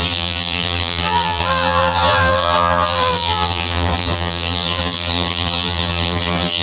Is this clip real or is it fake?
fake